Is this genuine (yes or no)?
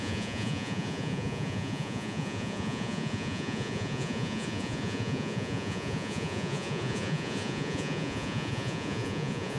no